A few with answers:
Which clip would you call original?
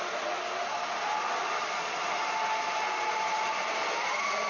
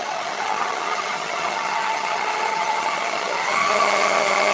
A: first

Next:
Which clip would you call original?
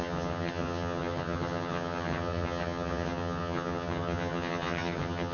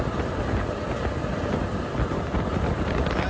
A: second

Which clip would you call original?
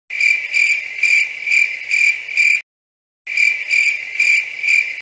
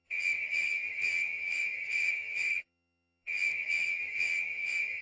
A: first